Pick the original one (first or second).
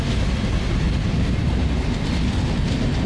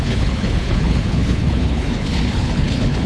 first